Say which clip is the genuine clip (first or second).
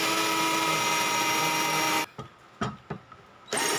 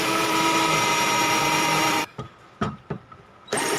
first